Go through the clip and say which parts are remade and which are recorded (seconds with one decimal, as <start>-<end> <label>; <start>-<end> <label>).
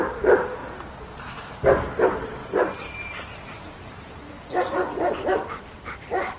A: 0.0-6.4 remade